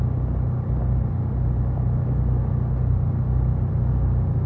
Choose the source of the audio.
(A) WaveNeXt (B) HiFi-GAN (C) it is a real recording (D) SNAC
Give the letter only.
C